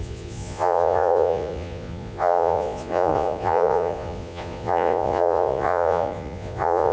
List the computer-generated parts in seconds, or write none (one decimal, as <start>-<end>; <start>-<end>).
0.0-6.9